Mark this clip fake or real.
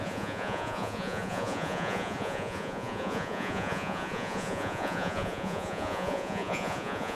fake